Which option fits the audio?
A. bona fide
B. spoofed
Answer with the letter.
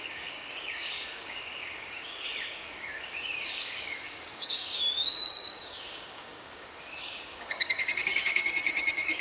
B